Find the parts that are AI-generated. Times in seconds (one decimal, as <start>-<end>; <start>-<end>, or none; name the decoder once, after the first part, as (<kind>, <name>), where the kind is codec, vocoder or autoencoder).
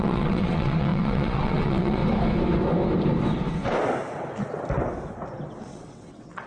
0.0-2.0 (vocoder, WaveNeXt); 5.6-6.5